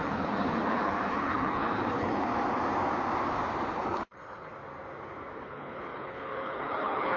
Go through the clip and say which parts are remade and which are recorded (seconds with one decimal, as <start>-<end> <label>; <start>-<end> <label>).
0.0-2.3 remade; 2.3-3.7 recorded; 3.7-4.5 remade; 4.5-5.4 recorded; 5.4-7.2 remade